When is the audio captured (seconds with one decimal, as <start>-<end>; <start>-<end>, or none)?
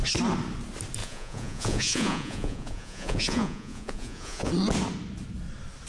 0.0-1.0; 4.5-5.9